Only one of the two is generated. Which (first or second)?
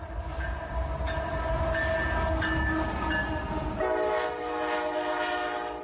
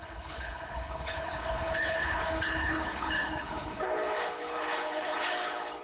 second